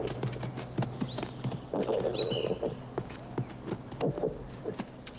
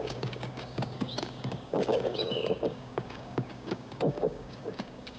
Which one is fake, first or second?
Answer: second